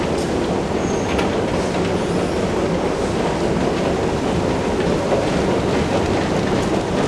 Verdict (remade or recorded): recorded